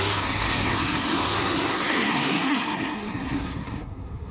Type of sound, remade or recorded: remade